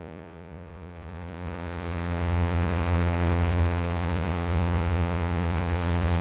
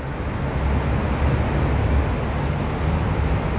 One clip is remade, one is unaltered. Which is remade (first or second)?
first